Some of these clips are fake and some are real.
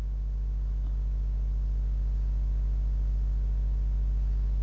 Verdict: real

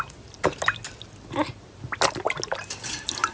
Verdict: real